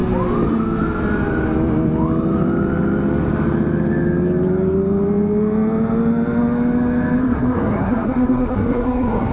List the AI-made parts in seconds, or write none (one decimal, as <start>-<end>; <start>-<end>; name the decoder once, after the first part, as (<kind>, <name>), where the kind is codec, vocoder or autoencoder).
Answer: 7.2-9.3 (codec, SNAC)